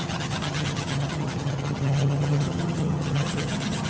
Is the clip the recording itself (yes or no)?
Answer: no